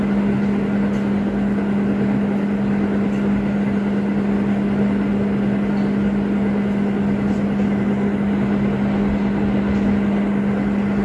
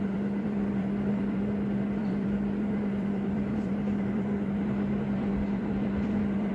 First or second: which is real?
first